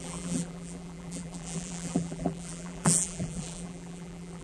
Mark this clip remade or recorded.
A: remade